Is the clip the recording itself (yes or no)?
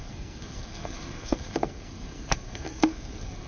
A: no